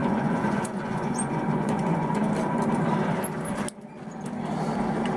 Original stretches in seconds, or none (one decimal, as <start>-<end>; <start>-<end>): 2.2-5.2